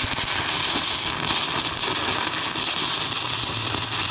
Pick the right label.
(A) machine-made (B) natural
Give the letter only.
B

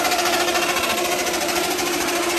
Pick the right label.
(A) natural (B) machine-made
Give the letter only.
A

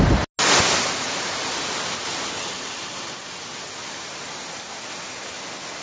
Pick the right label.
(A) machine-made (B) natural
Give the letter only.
B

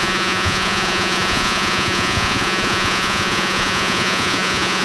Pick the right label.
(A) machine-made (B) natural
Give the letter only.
A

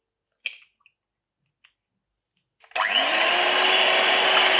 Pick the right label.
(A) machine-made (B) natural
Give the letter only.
B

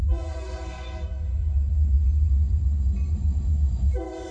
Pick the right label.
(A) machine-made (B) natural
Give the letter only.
A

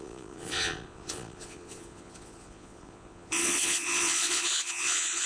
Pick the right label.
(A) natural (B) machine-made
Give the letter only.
B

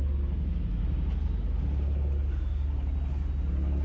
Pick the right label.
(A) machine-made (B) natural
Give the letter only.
B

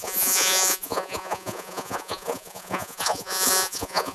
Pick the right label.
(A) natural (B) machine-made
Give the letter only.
B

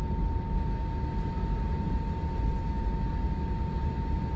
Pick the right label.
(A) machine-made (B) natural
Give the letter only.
B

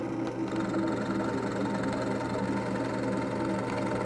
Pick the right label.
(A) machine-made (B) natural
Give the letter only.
B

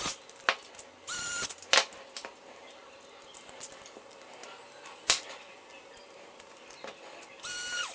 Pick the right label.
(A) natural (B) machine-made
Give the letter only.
A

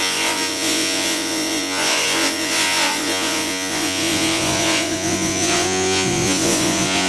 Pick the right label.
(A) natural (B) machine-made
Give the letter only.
B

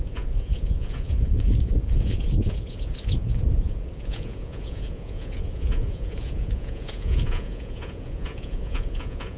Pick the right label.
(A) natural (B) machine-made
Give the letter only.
B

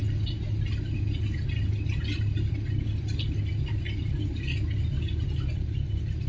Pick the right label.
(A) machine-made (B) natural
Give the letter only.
B